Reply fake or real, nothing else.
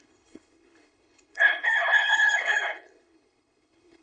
fake